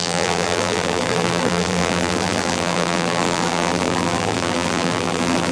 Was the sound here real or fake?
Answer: fake